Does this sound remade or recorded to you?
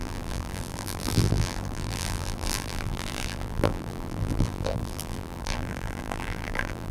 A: remade